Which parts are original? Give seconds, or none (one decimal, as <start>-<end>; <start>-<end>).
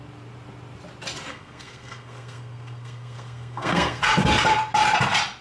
0.0-1.3; 4.0-5.4